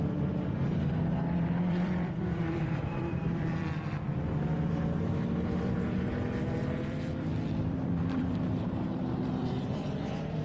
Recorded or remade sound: remade